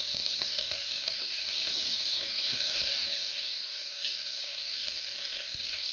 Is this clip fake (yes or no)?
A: yes